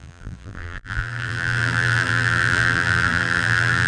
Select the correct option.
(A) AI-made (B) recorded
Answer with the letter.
A